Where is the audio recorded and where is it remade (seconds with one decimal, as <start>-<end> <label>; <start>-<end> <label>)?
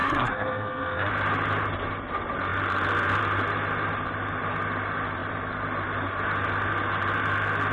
0.0-1.1 remade; 1.1-7.7 recorded